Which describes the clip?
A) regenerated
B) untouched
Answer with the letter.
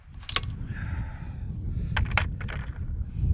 B